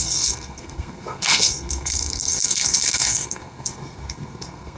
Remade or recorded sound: remade